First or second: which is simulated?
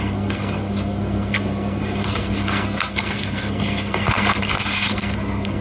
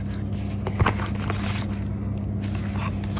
first